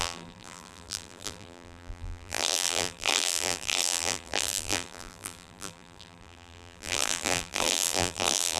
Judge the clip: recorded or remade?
remade